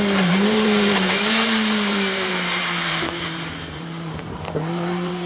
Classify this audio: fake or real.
fake